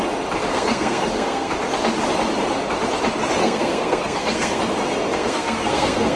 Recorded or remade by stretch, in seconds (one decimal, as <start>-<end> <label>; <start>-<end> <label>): 0.0-0.5 recorded; 0.5-1.5 remade; 1.5-3.4 recorded; 3.4-4.6 remade; 4.6-5.1 recorded; 5.1-6.2 remade